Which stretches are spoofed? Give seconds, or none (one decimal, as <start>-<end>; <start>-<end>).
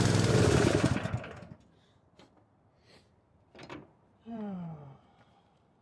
2.8-5.8